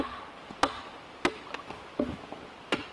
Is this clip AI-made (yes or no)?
no